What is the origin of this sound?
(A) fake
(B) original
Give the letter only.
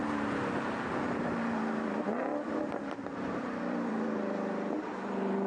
A